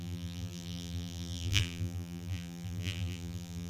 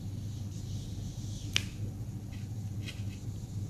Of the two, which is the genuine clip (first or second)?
second